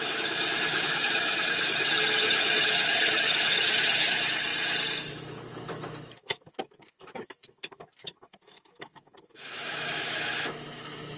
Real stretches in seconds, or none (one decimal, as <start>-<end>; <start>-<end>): 4.5-5.1